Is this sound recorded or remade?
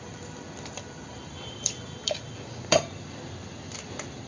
remade